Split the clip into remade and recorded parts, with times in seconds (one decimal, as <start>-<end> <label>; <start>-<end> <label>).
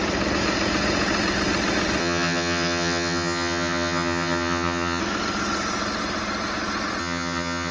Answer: 0.0-2.0 recorded; 2.0-5.0 remade; 5.0-7.0 recorded; 7.0-7.7 remade